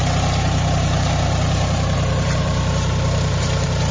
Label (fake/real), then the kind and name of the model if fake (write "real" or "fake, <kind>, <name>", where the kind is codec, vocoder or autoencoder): fake, vocoder, BigVGAN v2